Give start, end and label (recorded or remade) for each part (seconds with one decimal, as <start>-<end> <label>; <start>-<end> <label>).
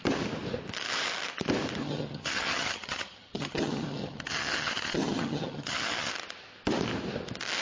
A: 0.0-1.8 recorded; 1.8-6.1 remade; 6.1-7.6 recorded